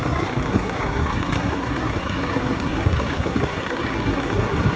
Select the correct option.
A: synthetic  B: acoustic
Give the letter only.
A